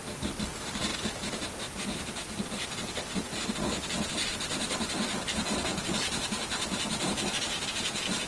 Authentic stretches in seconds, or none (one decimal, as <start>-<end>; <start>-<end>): 0.0-0.9; 3.2-4.3; 7.2-8.3